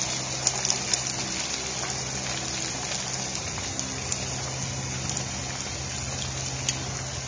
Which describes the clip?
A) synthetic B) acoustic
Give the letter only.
B